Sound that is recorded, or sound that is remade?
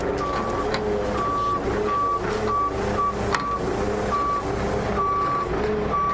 recorded